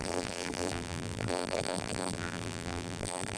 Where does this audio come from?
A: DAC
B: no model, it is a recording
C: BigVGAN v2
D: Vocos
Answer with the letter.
C